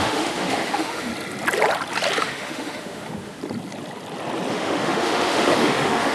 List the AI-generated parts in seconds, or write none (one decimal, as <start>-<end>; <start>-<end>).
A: 0.0-1.1; 2.2-3.4; 4.5-6.1